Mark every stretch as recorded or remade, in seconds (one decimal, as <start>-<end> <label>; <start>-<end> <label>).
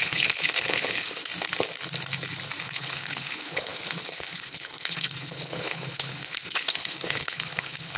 0.0-1.2 remade; 1.2-2.6 recorded; 2.6-8.0 remade